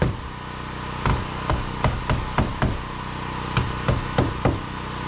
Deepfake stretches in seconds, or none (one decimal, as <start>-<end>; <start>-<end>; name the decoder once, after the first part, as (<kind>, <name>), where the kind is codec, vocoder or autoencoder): 1.1-2.0 (codec, DAC)